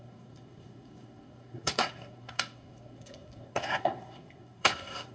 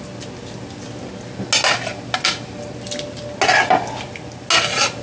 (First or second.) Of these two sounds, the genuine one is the second